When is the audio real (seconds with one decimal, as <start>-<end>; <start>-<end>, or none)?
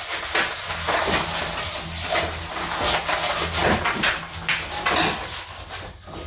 0.0-6.3